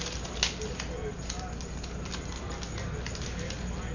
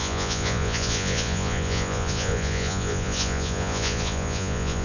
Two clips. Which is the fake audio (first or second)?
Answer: second